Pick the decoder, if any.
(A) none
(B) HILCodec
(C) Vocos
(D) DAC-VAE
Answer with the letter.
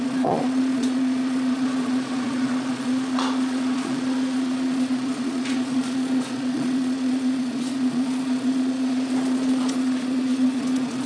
C